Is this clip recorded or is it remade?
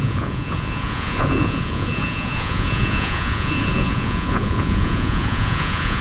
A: remade